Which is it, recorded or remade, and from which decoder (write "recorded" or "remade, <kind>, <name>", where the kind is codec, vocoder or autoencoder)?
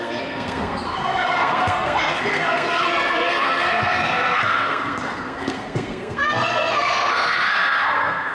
remade, codec, SNAC